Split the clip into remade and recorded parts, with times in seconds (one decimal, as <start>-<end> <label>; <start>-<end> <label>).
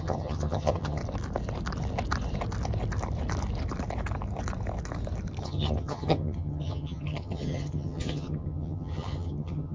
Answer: 0.0-1.0 remade; 1.0-5.4 recorded; 5.4-9.7 remade